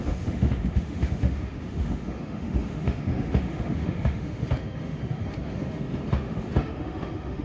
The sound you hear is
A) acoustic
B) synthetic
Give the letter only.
B